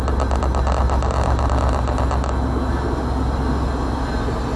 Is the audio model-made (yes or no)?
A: no